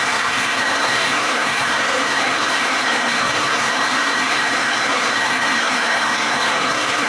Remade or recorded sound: remade